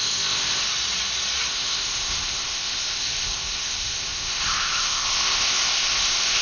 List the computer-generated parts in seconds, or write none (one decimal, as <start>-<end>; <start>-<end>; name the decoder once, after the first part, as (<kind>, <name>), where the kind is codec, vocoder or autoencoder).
0.0-0.6 (codec, ZipCodec); 1.5-6.4